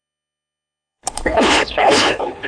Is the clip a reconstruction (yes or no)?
yes